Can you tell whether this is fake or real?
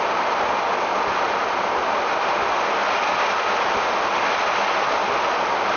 real